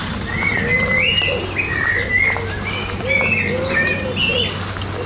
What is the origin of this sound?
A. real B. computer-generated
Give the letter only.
A